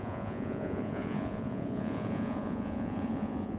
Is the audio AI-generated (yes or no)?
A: yes